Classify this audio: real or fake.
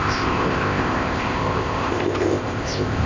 fake